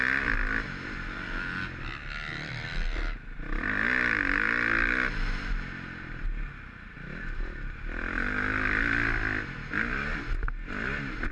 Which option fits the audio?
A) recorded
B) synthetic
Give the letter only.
A